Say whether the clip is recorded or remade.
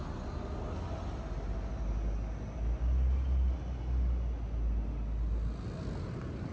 recorded